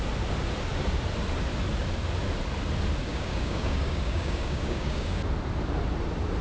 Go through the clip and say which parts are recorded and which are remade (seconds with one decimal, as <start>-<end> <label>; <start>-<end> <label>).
0.0-3.1 recorded; 3.1-5.2 remade; 5.2-6.4 recorded